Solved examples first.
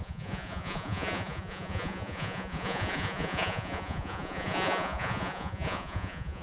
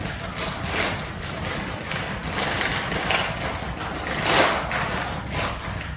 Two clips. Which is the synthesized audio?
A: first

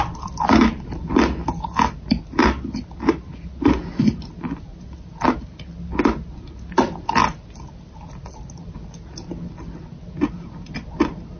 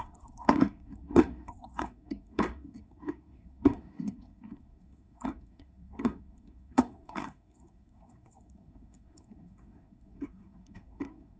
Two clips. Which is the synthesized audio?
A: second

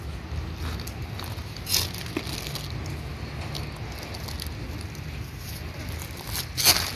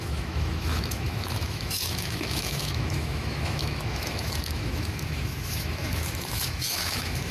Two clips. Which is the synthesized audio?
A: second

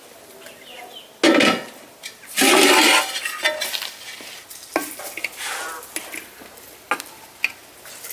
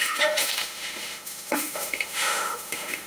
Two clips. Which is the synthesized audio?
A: second